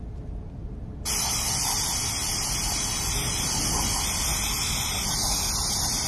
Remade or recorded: recorded